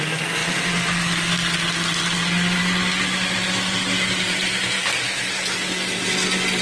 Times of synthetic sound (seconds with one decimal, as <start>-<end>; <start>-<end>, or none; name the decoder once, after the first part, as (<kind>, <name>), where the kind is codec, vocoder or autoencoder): 0.4-2.6 (vocoder, BigVGAN v2)